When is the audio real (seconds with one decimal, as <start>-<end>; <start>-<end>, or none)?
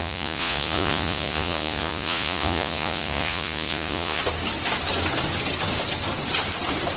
4.2-7.0